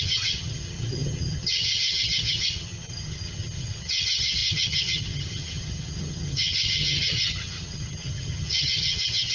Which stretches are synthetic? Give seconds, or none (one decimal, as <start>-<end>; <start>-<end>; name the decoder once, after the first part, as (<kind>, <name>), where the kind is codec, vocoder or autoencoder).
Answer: 0.0-9.3 (vocoder, HiFi-GAN)